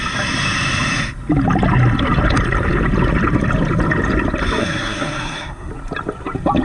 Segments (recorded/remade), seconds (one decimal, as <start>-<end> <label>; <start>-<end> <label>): 0.0-4.6 recorded; 4.6-5.7 remade; 5.7-6.6 recorded